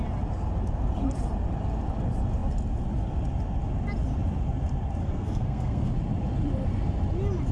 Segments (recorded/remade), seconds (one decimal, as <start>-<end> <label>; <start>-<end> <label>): 0.0-5.0 recorded; 5.0-5.9 remade; 5.9-7.5 recorded